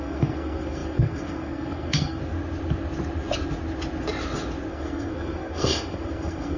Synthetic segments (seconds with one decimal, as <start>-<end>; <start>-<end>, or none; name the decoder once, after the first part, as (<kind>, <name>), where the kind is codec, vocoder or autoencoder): 0.0-2.2 (codec, SNAC); 4.7-6.6